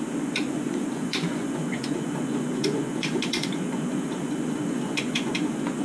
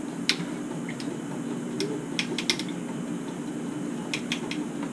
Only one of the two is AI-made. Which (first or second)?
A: first